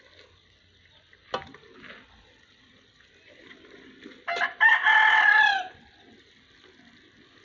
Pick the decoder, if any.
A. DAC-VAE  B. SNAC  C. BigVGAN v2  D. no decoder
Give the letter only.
D